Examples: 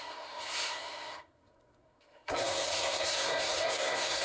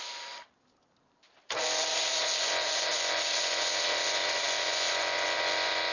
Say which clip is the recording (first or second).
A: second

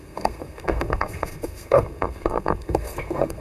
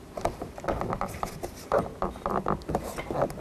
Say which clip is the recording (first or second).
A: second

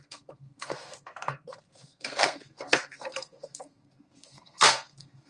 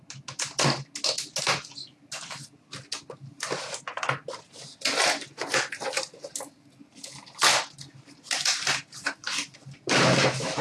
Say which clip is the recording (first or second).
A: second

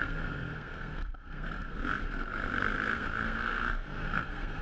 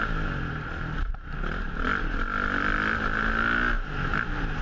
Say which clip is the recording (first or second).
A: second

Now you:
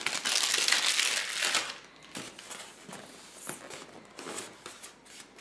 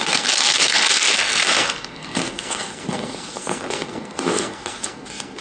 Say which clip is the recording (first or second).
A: first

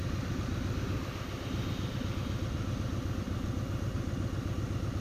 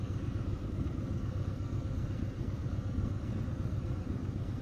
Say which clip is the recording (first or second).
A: first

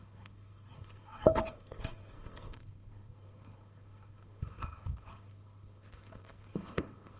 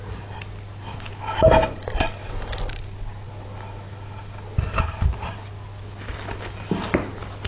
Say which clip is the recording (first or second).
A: second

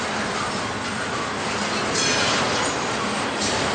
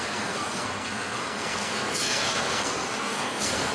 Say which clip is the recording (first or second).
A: first